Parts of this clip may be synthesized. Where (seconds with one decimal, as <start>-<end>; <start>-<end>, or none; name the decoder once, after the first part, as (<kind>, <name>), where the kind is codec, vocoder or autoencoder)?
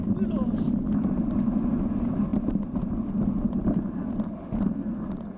none